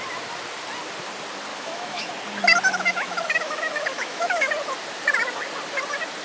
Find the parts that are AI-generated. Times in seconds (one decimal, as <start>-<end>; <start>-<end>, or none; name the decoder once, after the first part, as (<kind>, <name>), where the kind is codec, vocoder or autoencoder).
1.5-2.1 (autoencoder, DAC-VAE); 2.7-4.5